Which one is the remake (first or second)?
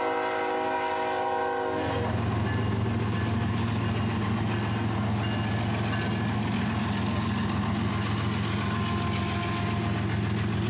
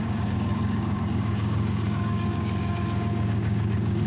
second